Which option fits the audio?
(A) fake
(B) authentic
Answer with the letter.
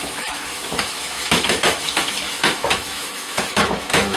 A